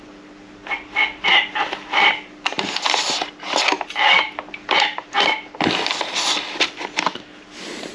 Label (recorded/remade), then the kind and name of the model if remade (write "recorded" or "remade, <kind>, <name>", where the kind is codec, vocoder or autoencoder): recorded